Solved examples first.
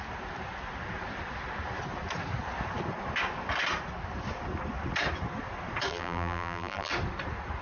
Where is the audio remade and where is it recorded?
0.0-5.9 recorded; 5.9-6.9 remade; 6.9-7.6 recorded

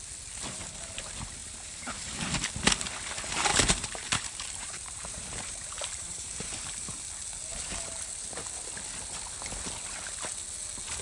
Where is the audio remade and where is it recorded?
0.0-1.4 recorded; 1.4-2.3 remade; 2.3-3.5 recorded; 3.5-7.1 remade; 7.1-7.5 recorded; 7.5-8.0 remade; 8.0-11.0 recorded

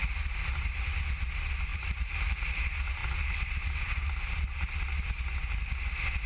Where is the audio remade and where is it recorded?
0.0-1.7 recorded; 1.7-2.5 remade; 2.5-6.3 recorded

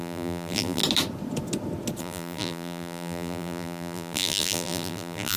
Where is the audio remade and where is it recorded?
0.0-0.8 remade; 0.8-2.0 recorded; 2.0-5.4 remade

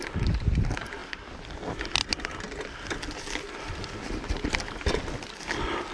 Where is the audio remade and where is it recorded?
0.0-5.9 recorded

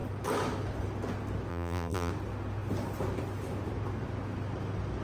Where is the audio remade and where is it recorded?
0.0-1.5 recorded; 1.5-2.1 remade; 2.1-5.0 recorded

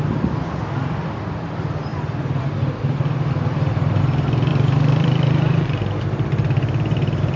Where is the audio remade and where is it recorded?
0.0-4.5 recorded; 4.5-7.4 remade